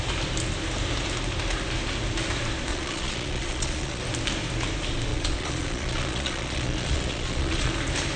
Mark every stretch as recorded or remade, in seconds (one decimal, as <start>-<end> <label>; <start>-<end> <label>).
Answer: 0.0-2.7 recorded; 2.7-4.0 remade; 4.0-5.1 recorded; 5.1-7.7 remade; 7.7-8.2 recorded